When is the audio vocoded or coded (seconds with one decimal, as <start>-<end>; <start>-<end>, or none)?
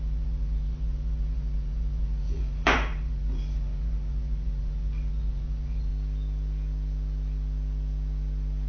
0.0-5.9